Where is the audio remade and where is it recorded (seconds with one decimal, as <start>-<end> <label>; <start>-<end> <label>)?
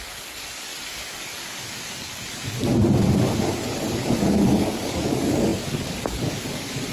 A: 0.0-2.7 remade; 2.7-3.4 recorded; 3.4-6.9 remade